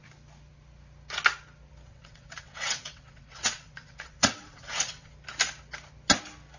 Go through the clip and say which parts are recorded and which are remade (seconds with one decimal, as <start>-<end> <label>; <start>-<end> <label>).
0.0-1.9 recorded; 1.9-5.1 remade; 5.1-6.6 recorded